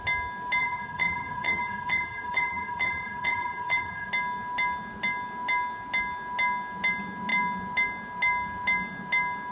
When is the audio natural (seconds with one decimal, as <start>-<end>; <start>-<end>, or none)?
0.0-0.6; 4.1-9.5